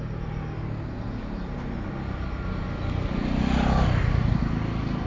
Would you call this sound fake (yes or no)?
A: no